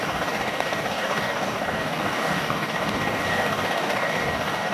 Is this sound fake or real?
fake